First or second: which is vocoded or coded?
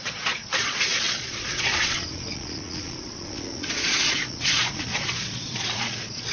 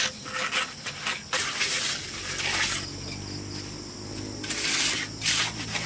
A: first